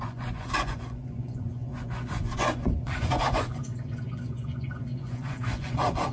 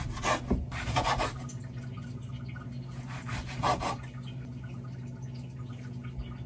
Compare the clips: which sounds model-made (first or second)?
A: first